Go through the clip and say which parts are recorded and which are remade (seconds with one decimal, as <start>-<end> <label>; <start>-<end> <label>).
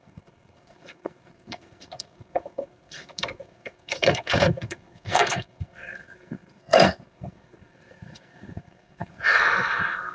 0.0-10.1 remade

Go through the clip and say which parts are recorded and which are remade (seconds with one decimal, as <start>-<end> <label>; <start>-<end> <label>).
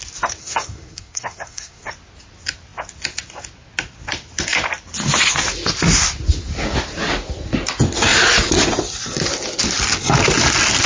0.0-0.4 recorded; 0.4-1.9 remade; 1.9-10.9 recorded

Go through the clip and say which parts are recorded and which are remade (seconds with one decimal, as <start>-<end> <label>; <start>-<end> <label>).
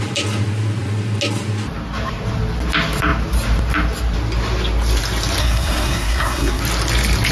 0.0-5.4 recorded; 5.4-6.6 remade; 6.6-7.3 recorded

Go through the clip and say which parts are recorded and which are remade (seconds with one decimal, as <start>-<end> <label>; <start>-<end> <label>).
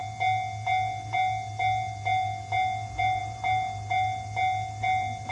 0.0-5.3 recorded